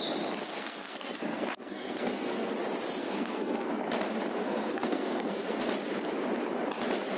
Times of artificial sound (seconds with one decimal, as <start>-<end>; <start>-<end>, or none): 0.5-2.5; 3.0-3.8; 4.4-5.6